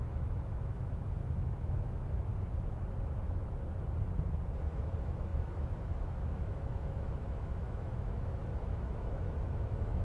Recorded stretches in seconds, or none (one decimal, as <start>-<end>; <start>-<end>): 2.3-4.6